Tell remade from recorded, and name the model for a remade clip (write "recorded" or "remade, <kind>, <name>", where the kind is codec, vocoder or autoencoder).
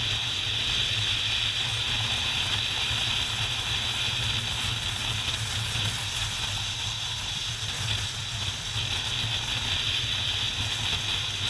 recorded